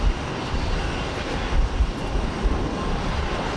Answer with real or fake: real